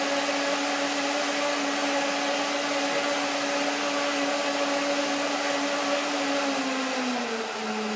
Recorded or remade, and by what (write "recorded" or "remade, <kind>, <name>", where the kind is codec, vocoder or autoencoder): recorded